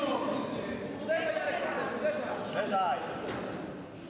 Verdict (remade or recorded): recorded